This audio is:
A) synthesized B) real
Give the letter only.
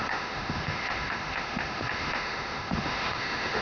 A